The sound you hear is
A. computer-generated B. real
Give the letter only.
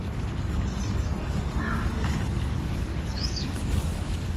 A